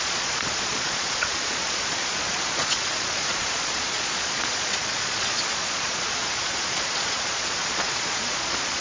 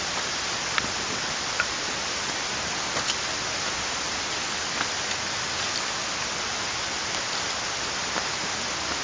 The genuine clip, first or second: second